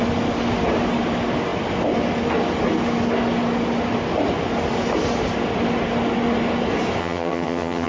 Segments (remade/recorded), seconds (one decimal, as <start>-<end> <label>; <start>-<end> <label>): 0.0-7.0 recorded; 7.0-7.9 remade